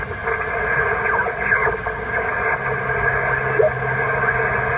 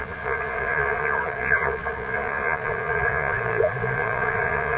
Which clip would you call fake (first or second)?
second